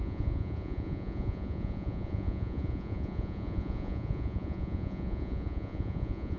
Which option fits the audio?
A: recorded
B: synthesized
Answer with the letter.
B